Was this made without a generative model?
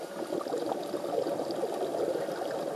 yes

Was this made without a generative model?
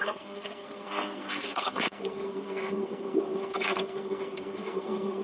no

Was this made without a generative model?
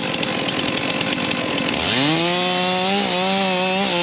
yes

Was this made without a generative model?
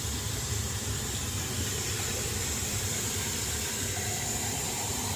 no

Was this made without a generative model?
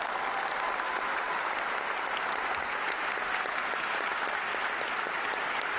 yes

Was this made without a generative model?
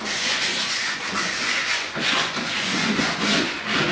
no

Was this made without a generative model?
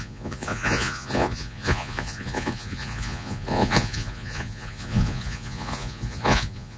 no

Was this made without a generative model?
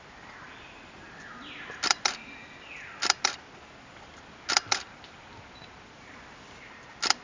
yes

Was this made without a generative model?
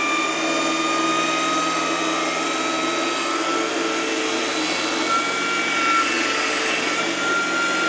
yes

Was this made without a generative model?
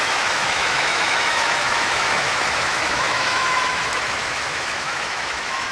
no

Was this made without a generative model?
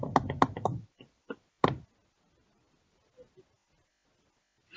yes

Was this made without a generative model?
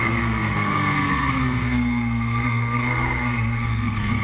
no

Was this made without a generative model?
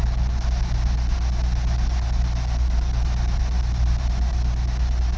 yes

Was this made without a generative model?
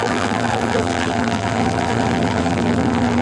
no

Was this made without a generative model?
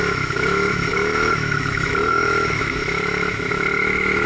no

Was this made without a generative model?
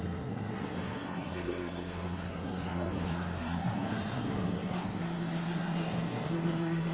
no